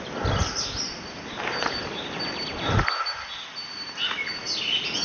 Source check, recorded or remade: recorded